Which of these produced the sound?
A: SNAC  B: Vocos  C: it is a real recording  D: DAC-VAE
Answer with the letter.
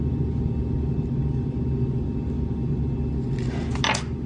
C